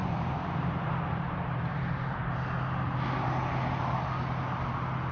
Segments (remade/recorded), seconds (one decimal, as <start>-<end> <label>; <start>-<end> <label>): 0.0-2.2 remade; 2.2-5.1 recorded